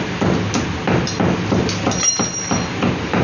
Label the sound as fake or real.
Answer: real